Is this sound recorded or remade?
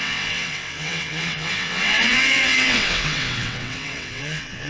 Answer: remade